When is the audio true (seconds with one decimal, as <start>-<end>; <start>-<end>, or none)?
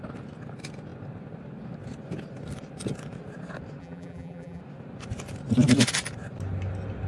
0.0-3.8; 4.6-7.1